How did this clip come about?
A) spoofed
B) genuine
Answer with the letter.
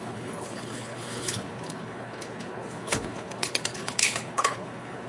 A